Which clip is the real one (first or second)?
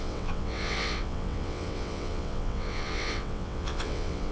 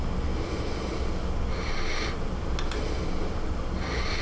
second